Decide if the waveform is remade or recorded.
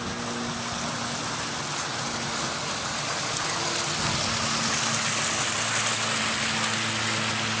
recorded